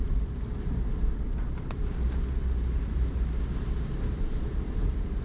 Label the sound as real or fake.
fake